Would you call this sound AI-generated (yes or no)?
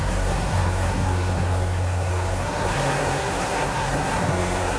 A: yes